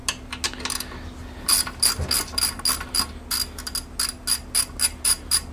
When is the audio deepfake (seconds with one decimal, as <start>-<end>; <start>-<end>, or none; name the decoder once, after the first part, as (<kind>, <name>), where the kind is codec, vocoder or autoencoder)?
none